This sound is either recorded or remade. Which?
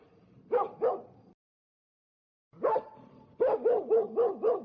remade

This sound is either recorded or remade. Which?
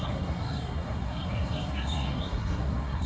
remade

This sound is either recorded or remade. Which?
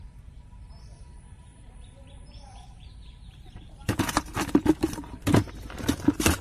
remade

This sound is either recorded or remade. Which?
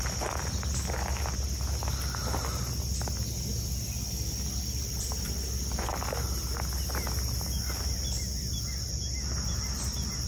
recorded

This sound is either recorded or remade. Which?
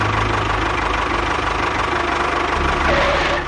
recorded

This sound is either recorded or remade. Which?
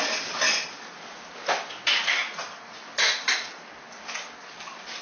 recorded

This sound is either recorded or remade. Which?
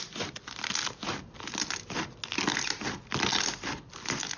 recorded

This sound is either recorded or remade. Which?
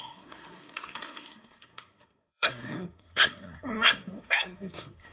remade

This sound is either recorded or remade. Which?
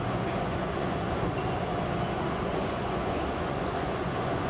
remade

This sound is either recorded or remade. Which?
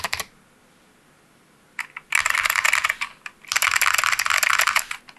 recorded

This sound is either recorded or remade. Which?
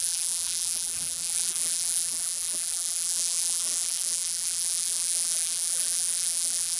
remade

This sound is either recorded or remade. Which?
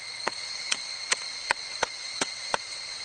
remade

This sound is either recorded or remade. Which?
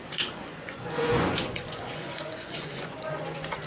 remade